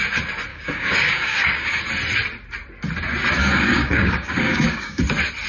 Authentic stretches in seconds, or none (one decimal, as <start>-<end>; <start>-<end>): 0.0-0.5; 1.8-3.4; 5.0-5.5